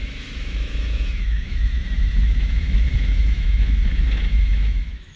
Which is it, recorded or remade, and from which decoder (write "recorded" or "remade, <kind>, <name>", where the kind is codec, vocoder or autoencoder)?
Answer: remade, autoencoder, DAC-VAE